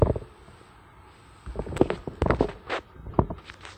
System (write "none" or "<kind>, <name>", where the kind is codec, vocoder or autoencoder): none